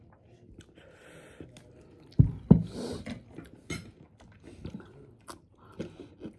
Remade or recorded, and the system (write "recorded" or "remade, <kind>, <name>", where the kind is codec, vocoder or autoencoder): recorded